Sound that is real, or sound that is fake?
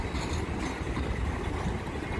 real